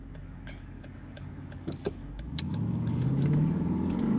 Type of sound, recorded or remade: remade